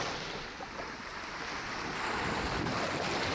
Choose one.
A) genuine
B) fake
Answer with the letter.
A